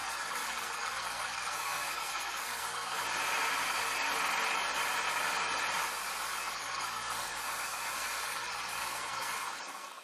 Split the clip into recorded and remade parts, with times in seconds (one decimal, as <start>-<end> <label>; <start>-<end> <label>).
0.0-3.0 remade; 3.0-6.5 recorded; 6.5-10.0 remade